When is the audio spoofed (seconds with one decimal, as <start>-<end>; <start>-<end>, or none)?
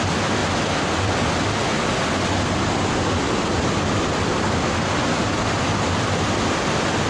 none